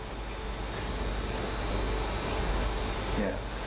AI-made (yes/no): no